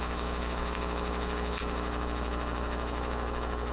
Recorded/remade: remade